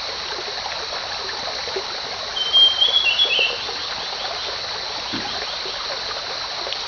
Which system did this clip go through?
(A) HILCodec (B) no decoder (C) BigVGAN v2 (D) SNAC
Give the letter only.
B